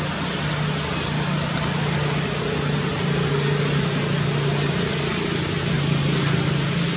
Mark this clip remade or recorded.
recorded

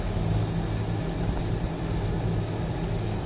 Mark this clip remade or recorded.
recorded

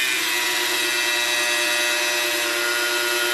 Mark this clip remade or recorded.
recorded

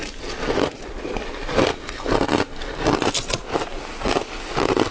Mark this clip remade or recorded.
recorded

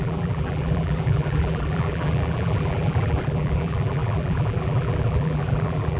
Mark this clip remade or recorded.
remade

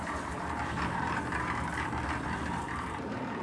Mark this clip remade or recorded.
remade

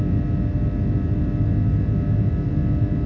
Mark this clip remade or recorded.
recorded